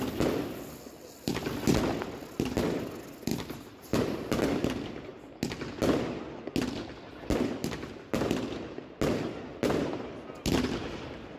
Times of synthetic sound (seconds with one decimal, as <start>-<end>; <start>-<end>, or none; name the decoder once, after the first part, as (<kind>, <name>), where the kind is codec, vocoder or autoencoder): none